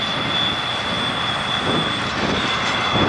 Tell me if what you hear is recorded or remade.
recorded